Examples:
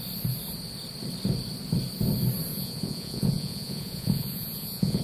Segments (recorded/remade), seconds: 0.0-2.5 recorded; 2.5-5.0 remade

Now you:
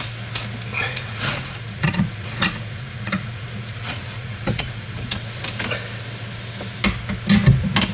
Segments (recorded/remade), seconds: 0.0-0.7 recorded; 0.7-5.4 remade; 5.4-7.9 recorded

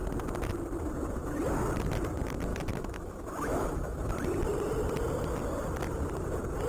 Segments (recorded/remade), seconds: 0.0-2.5 recorded; 2.5-4.1 remade; 4.1-6.7 recorded

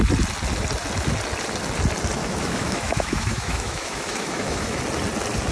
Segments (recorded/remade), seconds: 0.0-2.2 recorded; 2.2-4.8 remade; 4.8-5.5 recorded

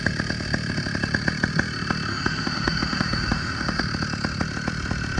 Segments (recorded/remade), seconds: 0.0-2.1 recorded; 2.1-3.8 remade; 3.8-5.2 recorded